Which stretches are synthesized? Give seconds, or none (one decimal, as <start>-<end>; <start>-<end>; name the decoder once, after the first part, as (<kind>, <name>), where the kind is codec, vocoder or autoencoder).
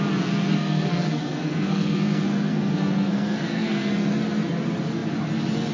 0.5-3.9 (codec, SNAC)